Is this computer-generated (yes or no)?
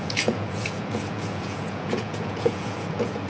yes